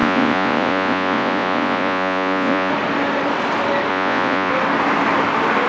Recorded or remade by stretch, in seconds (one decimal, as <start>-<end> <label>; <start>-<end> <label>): 0.0-2.7 remade; 2.7-3.9 recorded; 3.9-4.5 remade; 4.5-5.7 recorded